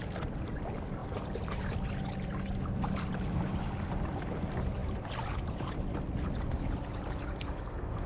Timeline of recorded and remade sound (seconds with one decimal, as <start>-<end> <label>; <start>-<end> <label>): 0.0-8.1 recorded